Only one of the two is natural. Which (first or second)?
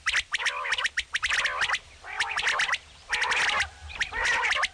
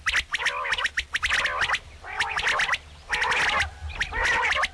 second